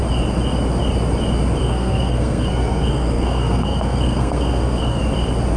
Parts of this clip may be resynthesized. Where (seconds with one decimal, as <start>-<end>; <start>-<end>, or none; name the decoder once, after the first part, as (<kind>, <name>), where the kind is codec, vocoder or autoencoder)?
1.6-5.0 (codec, SNAC)